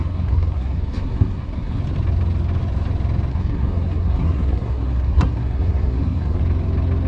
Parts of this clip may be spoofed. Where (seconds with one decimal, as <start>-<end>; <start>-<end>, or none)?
0.0-1.8; 3.3-6.4